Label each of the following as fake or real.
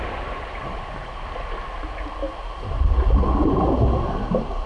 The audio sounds real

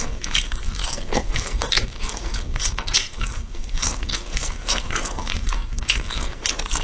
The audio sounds fake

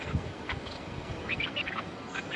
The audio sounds fake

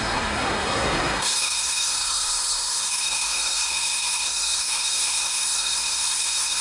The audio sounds fake